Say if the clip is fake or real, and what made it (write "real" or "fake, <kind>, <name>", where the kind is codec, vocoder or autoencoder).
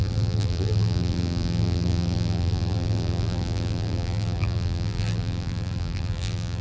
fake, vocoder, BigVGAN v2